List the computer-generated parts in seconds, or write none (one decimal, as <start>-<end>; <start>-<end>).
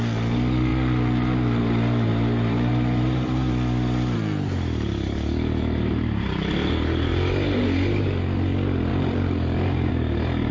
2.1-3.5; 8.9-9.9